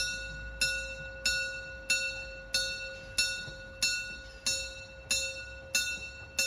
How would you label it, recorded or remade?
recorded